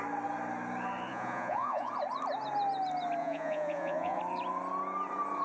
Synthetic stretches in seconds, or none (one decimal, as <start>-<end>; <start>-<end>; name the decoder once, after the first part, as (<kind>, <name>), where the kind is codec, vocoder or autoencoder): 1.1-1.9 (vocoder, Vocos); 3.2-4.2